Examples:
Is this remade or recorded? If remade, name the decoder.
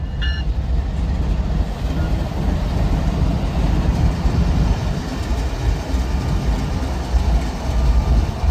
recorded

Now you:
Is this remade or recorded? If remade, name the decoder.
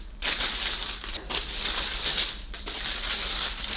recorded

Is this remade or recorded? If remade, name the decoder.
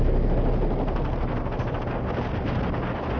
recorded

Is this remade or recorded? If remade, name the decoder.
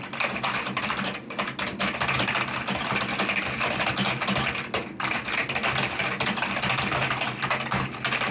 recorded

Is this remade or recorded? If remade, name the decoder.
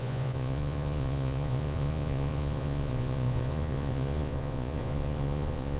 remade, vocoder, Vocos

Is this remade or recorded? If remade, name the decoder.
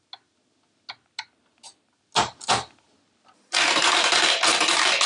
recorded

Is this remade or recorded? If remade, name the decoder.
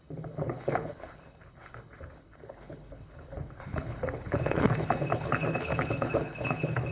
remade, codec, HILCodec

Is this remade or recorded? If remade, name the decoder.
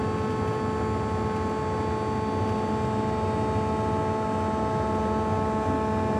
recorded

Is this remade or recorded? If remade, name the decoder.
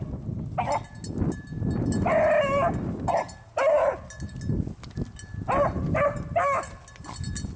recorded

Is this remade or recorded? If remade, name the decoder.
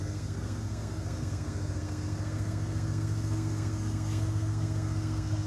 remade, codec, SNAC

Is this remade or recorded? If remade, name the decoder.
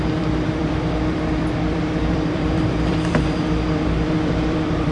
remade, vocoder, BigVGAN v2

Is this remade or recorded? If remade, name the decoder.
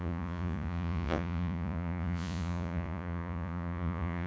remade, vocoder, Vocos